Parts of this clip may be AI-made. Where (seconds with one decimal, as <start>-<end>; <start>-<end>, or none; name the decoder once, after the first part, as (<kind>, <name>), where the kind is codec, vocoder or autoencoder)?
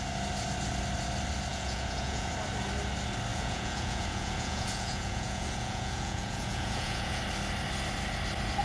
1.5-2.3 (vocoder, Vocos); 3.3-7.2